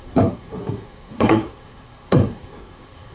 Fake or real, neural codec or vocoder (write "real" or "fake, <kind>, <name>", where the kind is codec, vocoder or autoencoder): fake, codec, SNAC